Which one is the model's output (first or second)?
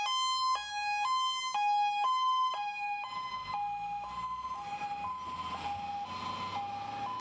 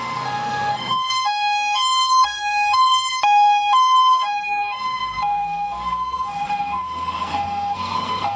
second